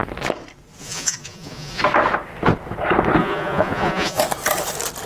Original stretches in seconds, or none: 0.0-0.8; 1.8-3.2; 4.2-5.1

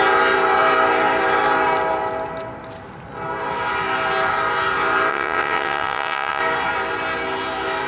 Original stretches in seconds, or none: 0.0-5.1; 6.4-7.9